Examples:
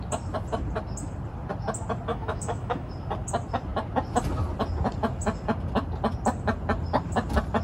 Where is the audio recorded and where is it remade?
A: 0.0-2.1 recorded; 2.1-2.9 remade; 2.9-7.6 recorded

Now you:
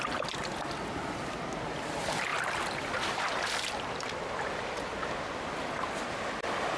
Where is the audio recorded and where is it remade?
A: 0.0-6.8 recorded

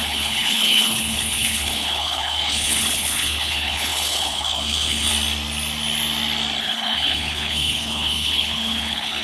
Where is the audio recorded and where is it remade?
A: 0.0-5.1 remade; 5.1-6.6 recorded; 6.6-9.2 remade